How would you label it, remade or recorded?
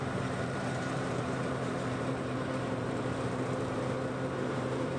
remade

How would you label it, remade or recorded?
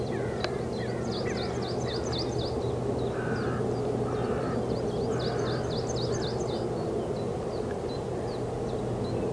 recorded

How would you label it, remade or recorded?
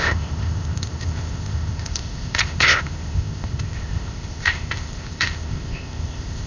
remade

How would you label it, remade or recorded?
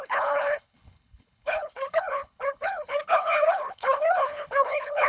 remade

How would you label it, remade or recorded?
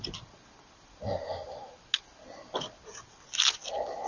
recorded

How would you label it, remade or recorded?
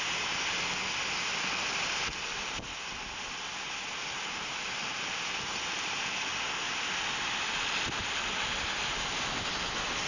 recorded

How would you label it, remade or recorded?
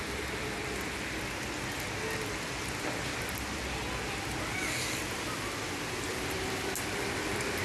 recorded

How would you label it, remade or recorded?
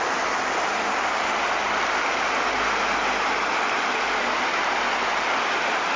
recorded